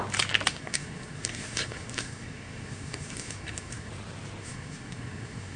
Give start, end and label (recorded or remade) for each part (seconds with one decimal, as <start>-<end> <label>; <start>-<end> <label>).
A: 0.0-0.5 recorded; 0.5-3.9 remade; 3.9-4.4 recorded; 4.4-5.6 remade